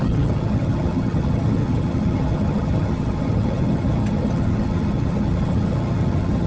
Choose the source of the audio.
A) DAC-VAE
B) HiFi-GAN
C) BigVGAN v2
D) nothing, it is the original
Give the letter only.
B